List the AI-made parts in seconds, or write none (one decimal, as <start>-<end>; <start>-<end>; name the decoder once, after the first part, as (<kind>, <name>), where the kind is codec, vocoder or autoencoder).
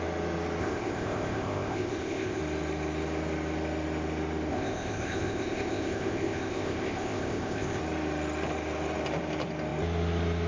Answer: 0.6-2.4 (codec, ZipCodec); 4.5-7.8